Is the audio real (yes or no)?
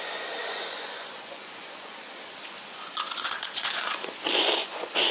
no